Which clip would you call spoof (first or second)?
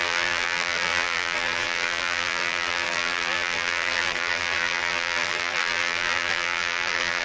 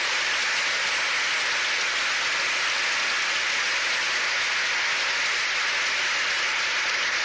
first